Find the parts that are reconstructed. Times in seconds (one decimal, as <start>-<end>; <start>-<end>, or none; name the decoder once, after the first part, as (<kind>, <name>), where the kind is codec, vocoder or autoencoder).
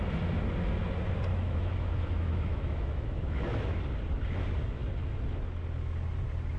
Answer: 1.3-3.8 (autoencoder, DAC-VAE)